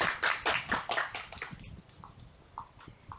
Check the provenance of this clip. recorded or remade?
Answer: recorded